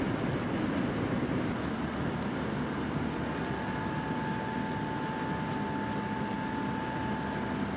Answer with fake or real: real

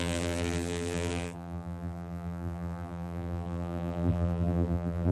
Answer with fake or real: fake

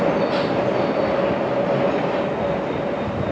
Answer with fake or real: real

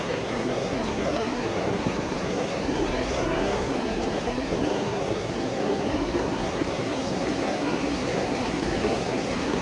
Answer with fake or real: fake